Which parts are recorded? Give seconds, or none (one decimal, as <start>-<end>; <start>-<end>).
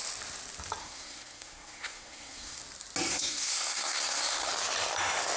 0.0-0.8; 2.6-3.1; 4.5-5.4